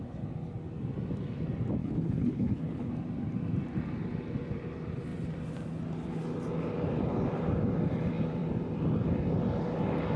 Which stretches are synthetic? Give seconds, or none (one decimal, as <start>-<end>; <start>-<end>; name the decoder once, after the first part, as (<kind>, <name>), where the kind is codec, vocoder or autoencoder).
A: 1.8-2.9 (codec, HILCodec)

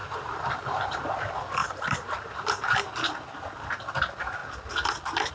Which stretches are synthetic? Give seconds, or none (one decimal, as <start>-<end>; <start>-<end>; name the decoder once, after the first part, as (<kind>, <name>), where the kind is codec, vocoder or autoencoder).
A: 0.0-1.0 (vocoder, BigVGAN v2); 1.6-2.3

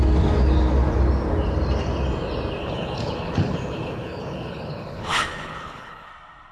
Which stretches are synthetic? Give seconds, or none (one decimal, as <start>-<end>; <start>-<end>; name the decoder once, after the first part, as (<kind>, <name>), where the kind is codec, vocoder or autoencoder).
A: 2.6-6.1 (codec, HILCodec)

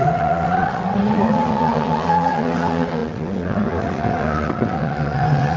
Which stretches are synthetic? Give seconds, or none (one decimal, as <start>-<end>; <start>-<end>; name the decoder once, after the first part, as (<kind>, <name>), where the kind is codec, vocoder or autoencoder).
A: 0.0-5.6 (vocoder, WaveNeXt)

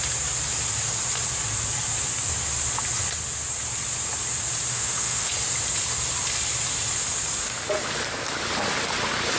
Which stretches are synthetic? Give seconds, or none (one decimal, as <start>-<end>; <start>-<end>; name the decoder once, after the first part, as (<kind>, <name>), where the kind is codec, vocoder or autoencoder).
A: 4.7-5.3 (autoencoder, DAC-VAE)